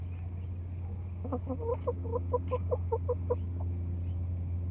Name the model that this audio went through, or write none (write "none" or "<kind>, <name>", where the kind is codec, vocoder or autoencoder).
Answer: none